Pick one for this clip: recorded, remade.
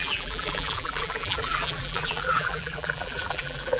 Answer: remade